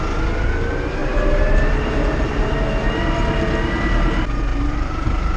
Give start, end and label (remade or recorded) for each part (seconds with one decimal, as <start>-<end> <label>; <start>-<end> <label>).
0.0-1.0 recorded; 1.0-2.5 remade; 2.5-4.5 recorded; 4.5-5.4 remade